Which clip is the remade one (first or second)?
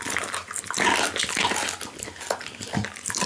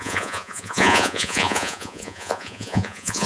second